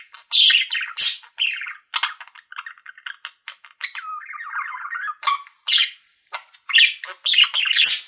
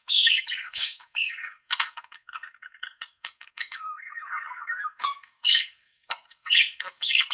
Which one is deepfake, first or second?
second